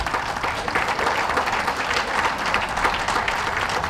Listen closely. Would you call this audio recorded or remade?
remade